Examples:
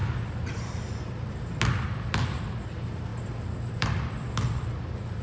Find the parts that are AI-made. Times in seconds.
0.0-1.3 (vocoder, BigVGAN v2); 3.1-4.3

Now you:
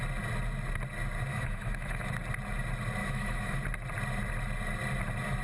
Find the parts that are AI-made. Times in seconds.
1.3-2.1 (autoencoder, DAC-VAE); 3.0-3.6

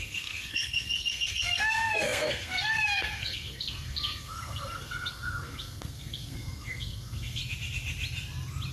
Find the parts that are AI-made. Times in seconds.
0.0-7.4 (codec, SNAC)